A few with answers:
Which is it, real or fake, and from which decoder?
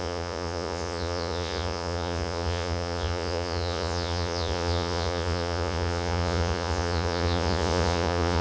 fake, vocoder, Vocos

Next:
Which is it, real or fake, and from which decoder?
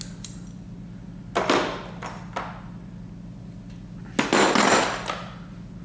real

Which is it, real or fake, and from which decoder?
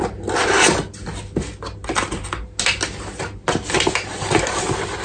real